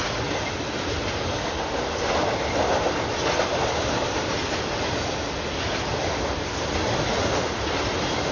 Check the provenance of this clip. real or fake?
real